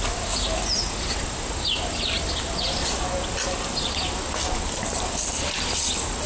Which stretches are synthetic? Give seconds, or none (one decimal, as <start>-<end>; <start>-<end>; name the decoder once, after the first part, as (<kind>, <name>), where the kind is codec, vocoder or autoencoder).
none